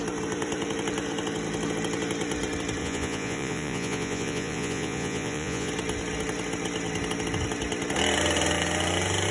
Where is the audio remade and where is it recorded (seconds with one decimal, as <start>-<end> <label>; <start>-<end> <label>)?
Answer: 0.0-2.8 recorded; 2.8-5.7 remade; 5.7-9.3 recorded